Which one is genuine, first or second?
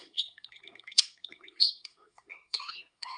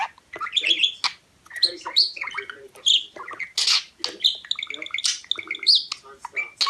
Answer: second